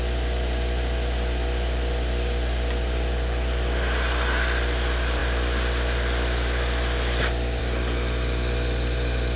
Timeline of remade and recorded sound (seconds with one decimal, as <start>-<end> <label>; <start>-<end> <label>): 0.0-9.4 recorded